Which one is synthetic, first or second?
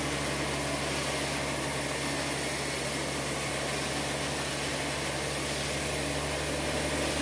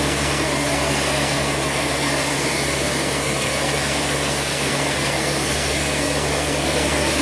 second